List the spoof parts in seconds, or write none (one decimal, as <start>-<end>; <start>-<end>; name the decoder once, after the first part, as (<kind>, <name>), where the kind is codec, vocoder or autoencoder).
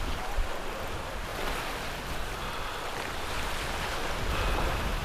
none